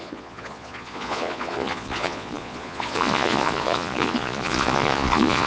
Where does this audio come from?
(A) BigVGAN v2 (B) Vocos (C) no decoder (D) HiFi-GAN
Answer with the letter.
B